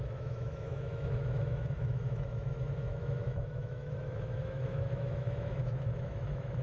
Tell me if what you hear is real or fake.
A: fake